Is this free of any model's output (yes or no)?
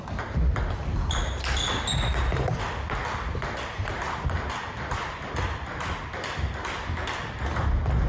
yes